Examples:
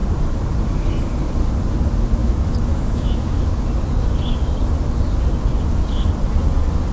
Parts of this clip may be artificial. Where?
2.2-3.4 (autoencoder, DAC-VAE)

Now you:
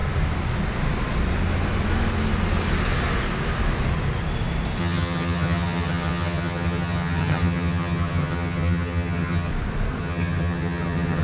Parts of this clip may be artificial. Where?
4.8-9.5 (vocoder, HiFi-GAN); 10.0-11.2

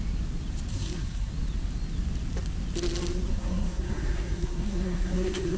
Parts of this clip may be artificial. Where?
0.7-1.3 (codec, SNAC); 3.3-5.6